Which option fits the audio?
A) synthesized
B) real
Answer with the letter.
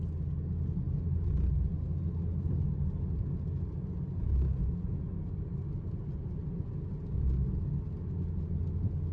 B